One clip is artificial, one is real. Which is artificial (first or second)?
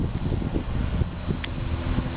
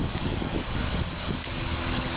second